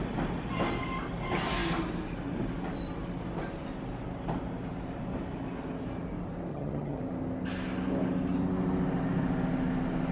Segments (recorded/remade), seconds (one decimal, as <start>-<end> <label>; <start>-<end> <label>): 0.0-6.5 recorded; 6.5-7.0 remade; 7.0-10.1 recorded